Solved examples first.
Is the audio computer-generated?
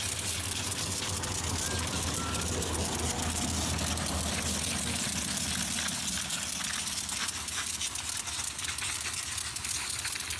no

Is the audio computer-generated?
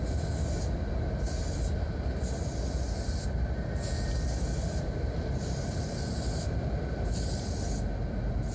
no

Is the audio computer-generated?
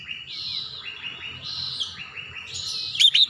no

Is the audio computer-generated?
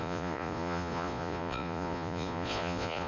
yes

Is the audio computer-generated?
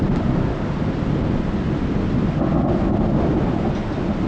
no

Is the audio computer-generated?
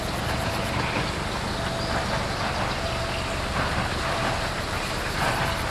no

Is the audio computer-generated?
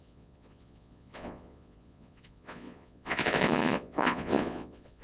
yes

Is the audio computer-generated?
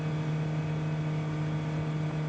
no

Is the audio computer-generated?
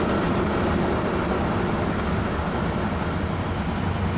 no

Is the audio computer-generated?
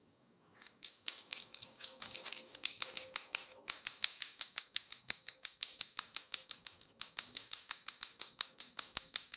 yes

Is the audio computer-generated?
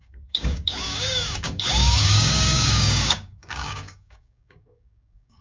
yes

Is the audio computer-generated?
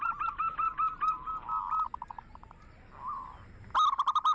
no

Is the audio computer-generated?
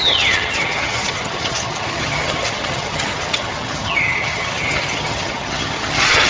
yes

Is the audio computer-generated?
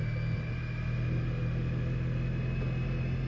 no